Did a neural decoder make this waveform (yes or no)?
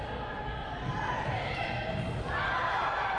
no